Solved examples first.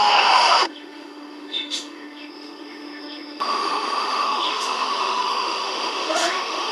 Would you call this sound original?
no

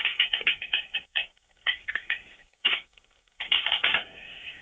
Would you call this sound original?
no